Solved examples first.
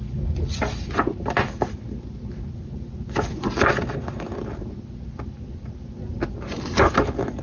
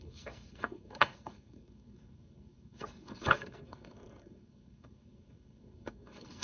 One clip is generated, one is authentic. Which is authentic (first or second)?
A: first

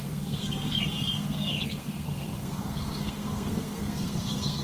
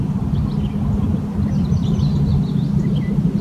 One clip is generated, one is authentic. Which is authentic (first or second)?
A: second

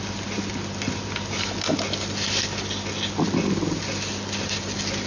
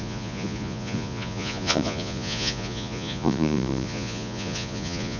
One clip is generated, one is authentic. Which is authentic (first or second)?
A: first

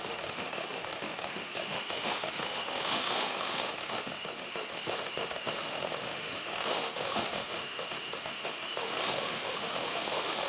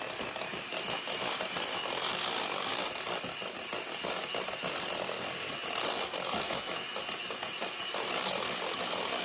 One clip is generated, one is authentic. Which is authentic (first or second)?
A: second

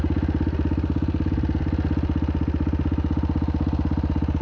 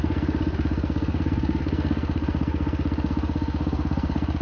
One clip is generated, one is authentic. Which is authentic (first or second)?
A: first